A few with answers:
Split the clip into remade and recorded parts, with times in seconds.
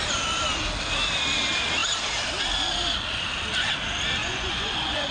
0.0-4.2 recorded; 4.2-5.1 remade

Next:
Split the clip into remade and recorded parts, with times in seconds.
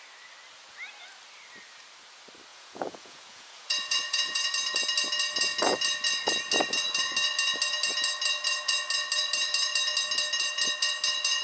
0.0-2.5 recorded; 2.5-4.5 remade; 4.5-11.4 recorded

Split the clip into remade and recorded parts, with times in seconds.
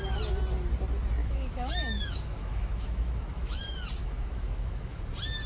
0.0-1.2 recorded; 1.2-3.6 remade; 3.6-4.0 recorded; 4.0-5.0 remade; 5.0-5.5 recorded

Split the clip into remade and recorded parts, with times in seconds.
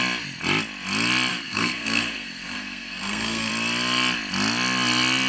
0.0-1.3 recorded; 1.3-3.5 remade; 3.5-5.3 recorded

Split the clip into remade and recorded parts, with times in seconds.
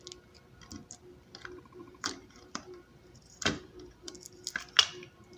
0.0-1.8 recorded; 1.8-4.1 remade; 4.1-5.4 recorded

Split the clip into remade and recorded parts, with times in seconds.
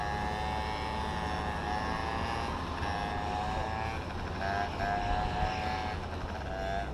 0.0-6.9 recorded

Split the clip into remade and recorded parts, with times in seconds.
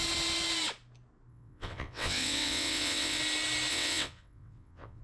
0.0-1.3 recorded; 1.3-3.2 remade; 3.2-3.7 recorded; 3.7-5.0 remade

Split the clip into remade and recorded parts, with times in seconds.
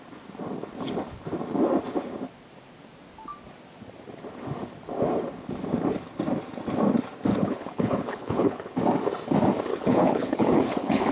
0.0-7.3 recorded; 7.3-8.8 remade; 8.8-9.7 recorded; 9.7-11.1 remade